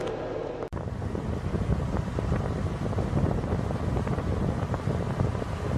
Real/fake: real